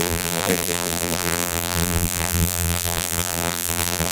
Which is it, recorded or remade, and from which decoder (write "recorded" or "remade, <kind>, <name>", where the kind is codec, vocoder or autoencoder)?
remade, vocoder, BigVGAN v2